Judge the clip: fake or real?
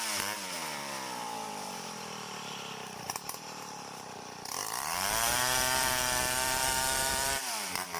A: fake